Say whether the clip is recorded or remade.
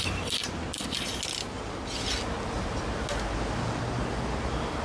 recorded